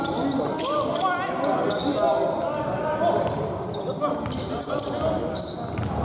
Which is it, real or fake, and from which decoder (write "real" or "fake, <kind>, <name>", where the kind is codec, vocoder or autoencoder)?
real